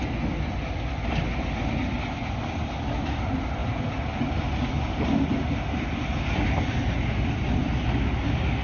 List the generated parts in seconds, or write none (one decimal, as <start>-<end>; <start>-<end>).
none